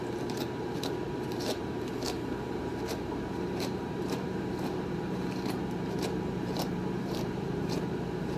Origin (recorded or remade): remade